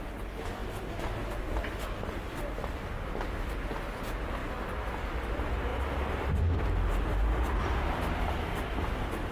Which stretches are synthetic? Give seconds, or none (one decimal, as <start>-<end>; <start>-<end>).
none